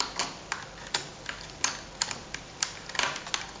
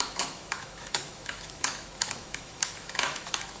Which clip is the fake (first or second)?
second